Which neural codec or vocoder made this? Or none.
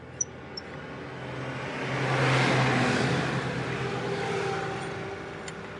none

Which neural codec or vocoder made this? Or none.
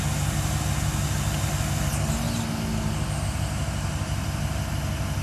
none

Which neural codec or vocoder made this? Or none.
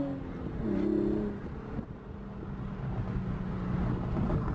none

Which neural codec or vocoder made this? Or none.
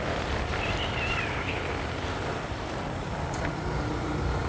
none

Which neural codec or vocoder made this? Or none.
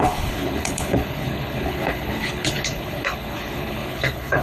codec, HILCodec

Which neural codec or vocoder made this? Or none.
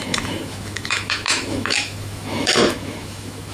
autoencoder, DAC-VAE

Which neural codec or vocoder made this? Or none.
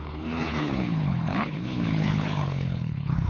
codec, HILCodec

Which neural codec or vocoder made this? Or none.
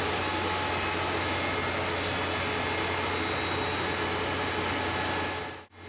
none